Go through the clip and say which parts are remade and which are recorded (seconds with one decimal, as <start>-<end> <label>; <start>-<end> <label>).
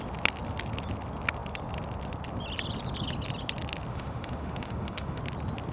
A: 0.0-3.9 recorded; 3.9-5.2 remade; 5.2-5.7 recorded